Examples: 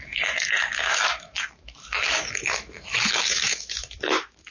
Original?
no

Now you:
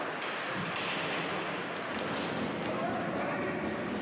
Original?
yes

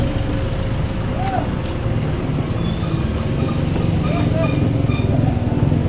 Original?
yes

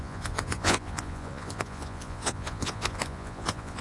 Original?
no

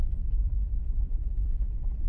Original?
no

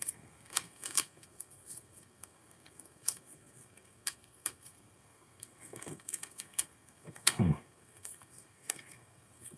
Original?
no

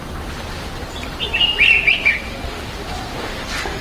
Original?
yes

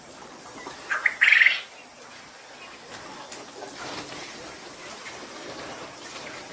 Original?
yes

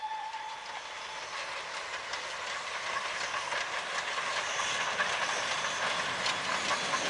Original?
yes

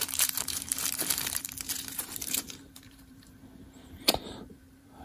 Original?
no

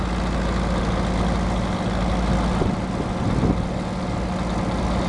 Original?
yes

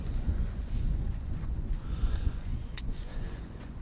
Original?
no